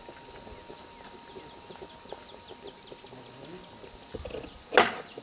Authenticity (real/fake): real